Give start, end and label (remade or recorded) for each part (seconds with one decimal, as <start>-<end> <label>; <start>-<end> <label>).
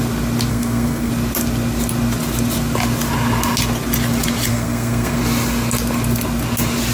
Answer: 0.0-0.5 recorded; 0.5-1.1 remade; 1.1-4.5 recorded; 4.5-5.2 remade; 5.2-6.9 recorded